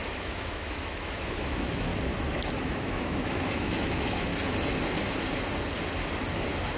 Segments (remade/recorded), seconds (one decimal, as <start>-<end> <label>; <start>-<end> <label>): 0.0-1.9 remade; 1.9-2.6 recorded; 2.6-4.3 remade; 4.3-6.8 recorded